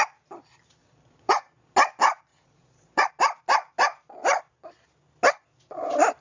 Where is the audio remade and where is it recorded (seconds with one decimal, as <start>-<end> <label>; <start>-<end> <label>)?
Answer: 0.0-0.8 recorded; 0.8-1.7 remade; 1.7-2.3 recorded; 2.3-3.1 remade; 3.1-6.2 recorded